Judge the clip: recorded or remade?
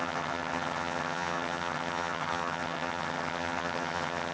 remade